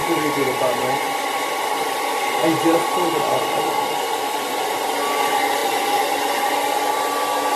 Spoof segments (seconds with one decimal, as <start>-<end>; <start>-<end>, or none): none